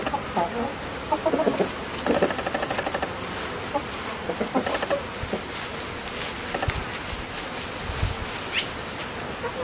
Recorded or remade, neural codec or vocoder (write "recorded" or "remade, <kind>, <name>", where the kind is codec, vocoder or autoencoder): recorded